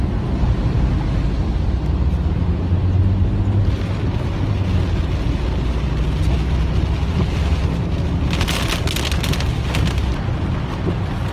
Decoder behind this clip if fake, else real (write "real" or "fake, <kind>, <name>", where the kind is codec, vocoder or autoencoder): real